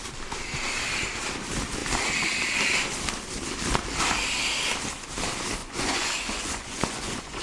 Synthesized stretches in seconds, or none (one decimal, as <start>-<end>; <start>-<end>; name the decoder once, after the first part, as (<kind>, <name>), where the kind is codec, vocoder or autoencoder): 5.6-7.4 (vocoder, Vocos)